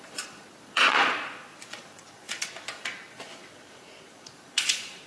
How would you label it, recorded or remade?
remade